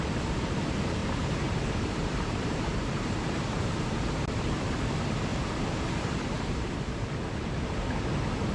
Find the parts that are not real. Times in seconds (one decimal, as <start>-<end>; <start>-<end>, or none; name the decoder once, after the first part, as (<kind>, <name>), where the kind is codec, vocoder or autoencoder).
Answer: 1.0-3.7 (vocoder, BigVGAN v2); 5.3-6.7